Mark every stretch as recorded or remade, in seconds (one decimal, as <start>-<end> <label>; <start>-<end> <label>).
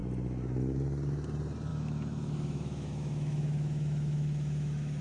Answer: 0.0-1.7 recorded; 1.7-5.0 remade